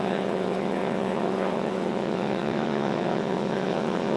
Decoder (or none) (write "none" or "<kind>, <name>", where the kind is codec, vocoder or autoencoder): vocoder, WaveNeXt